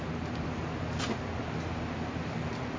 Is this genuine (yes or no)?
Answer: yes